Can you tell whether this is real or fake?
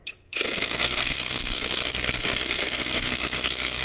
fake